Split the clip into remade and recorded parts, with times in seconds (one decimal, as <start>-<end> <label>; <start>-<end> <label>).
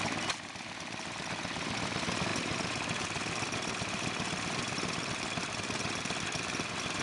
0.0-7.0 recorded